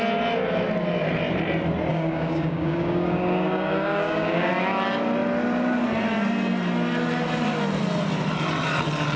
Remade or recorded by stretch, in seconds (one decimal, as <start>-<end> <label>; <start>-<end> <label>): 0.0-1.9 recorded; 1.9-4.5 remade; 4.5-9.2 recorded